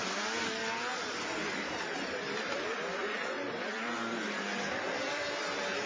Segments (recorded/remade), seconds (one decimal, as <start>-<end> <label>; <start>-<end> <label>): 0.0-3.0 recorded; 3.0-4.9 remade; 4.9-5.9 recorded